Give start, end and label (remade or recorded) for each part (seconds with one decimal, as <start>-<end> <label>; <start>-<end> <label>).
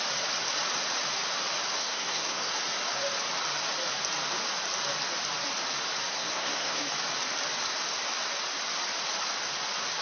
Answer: 0.0-1.8 recorded; 1.8-2.5 remade; 2.5-6.1 recorded; 6.1-6.8 remade; 6.8-10.0 recorded